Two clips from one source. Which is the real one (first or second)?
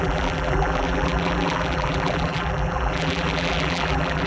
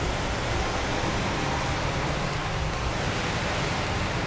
second